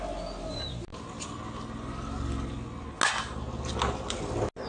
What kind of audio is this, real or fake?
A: real